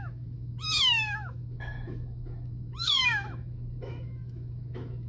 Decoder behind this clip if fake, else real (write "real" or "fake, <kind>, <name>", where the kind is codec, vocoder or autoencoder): fake, autoencoder, DAC-VAE